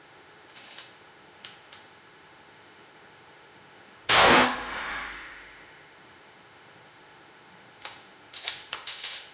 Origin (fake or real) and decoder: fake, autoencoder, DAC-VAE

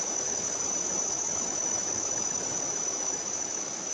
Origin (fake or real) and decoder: fake, autoencoder, DAC-VAE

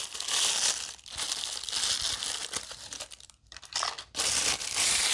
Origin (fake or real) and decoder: real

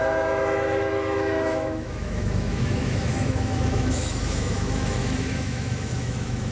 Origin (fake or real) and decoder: fake, autoencoder, DAC-VAE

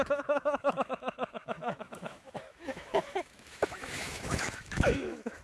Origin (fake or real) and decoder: fake, autoencoder, DAC-VAE